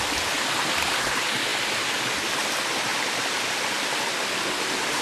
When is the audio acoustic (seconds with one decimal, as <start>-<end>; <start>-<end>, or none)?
0.0-5.0